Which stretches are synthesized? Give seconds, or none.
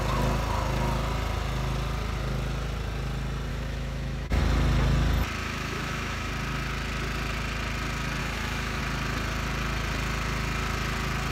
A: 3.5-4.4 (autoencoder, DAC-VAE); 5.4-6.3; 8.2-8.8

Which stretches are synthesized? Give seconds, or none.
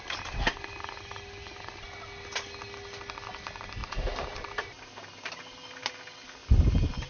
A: 3.8-5.4 (vocoder, BigVGAN v2); 6.4-7.1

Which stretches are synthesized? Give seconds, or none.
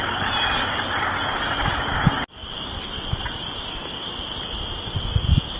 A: none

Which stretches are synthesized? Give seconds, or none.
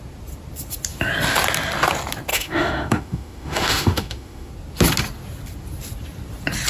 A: 2.3-4.5 (autoencoder, DAC-VAE)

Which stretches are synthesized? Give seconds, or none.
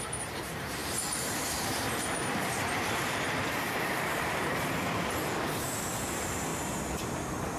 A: 0.0-6.5 (vocoder, BigVGAN v2); 7.0-7.6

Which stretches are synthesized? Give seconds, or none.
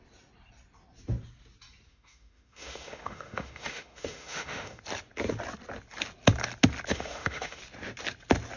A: 1.9-4.8 (autoencoder, DAC-VAE); 6.9-7.6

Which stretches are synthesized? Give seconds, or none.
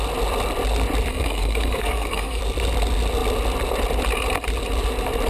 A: 1.1-2.4 (codec, SNAC)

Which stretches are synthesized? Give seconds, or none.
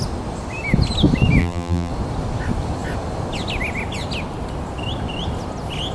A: 1.4-1.9 (vocoder, BigVGAN v2)